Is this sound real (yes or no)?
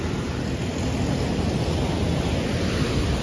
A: yes